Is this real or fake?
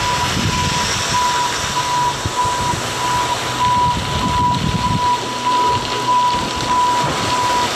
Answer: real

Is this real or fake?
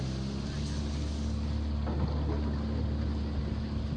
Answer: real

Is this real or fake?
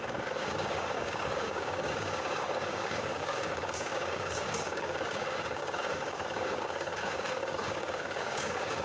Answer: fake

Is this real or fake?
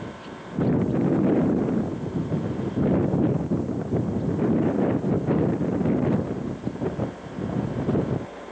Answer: real